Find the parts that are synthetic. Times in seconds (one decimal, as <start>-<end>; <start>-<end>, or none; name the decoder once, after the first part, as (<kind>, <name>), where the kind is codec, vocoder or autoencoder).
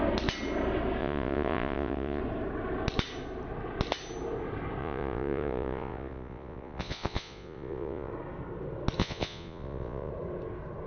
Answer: 1.0-2.2 (vocoder, Vocos); 4.8-8.1; 9.0-10.1